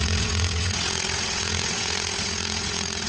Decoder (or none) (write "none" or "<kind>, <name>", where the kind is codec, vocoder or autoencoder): vocoder, WaveNeXt